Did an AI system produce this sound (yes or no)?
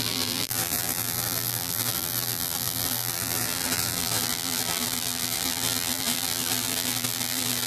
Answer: yes